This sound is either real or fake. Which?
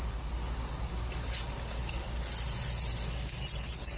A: real